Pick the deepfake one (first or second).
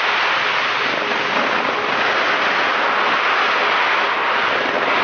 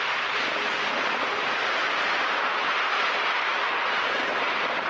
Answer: second